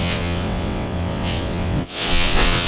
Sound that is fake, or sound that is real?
fake